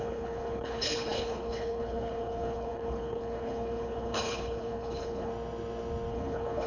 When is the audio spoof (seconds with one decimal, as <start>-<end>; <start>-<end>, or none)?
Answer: 0.0-5.3; 6.1-6.7